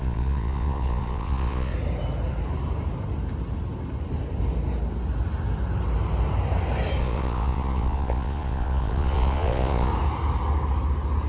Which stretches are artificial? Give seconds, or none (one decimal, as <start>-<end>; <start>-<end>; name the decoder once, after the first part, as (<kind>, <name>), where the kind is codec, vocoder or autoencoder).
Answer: 0.0-1.7 (vocoder, Vocos); 7.0-9.9